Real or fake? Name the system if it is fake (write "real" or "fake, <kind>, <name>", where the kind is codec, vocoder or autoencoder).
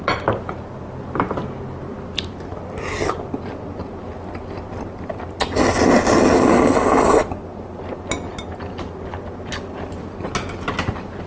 real